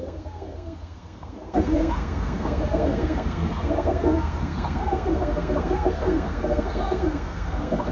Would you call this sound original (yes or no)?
no